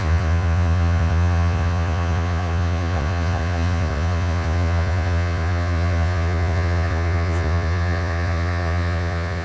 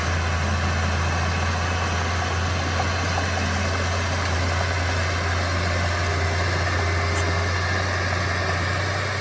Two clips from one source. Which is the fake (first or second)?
first